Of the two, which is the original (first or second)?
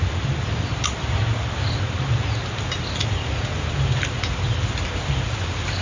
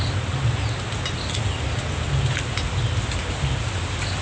second